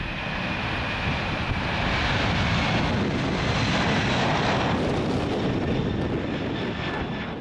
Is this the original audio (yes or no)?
yes